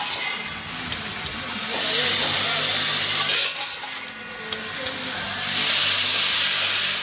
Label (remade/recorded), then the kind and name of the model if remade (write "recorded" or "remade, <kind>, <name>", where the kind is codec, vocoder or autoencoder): recorded